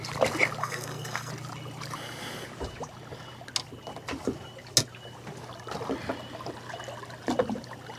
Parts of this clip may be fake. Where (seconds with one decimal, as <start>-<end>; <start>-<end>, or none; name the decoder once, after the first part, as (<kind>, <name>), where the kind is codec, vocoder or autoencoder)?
0.6-1.3 (codec, SNAC)